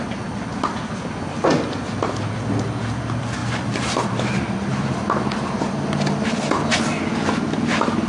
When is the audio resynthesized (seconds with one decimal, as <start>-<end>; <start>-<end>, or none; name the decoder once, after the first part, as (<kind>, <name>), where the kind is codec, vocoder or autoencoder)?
3.4-5.7 (vocoder, BigVGAN v2)